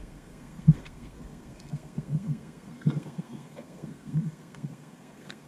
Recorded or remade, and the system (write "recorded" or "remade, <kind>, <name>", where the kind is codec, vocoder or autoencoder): remade, codec, SNAC